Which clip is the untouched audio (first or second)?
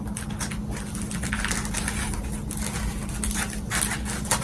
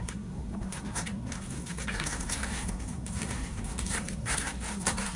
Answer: first